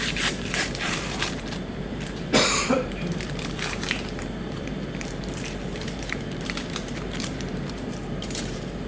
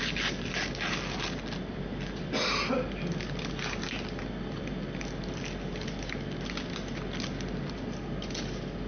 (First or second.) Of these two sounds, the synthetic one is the first